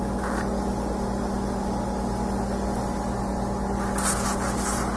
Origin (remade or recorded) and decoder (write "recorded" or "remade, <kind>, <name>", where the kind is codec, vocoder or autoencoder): recorded